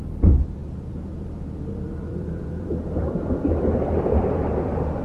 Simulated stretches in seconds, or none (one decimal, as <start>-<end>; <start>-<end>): 0.0-5.0